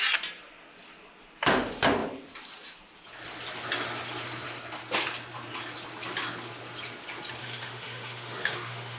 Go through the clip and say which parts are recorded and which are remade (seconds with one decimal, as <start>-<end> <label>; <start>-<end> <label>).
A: 0.0-7.4 recorded; 7.4-9.0 remade